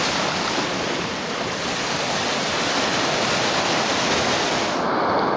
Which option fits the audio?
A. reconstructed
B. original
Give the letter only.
B